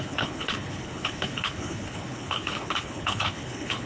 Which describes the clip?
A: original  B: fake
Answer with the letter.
B